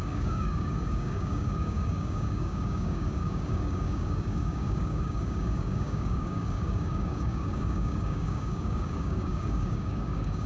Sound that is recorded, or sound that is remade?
remade